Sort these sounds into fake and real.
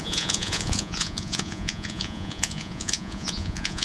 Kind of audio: fake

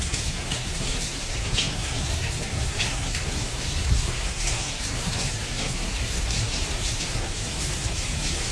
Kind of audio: fake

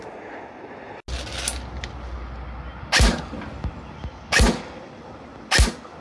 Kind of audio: real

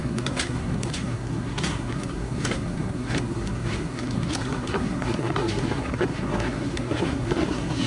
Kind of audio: fake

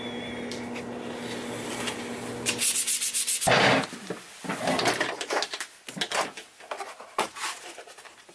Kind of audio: real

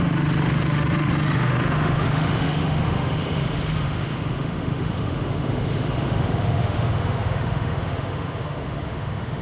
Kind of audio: fake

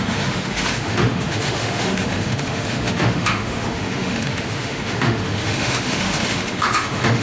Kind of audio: fake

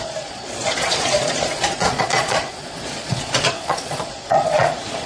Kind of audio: fake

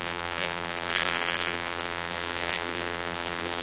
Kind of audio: fake